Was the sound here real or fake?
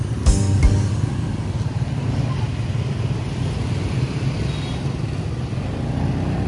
real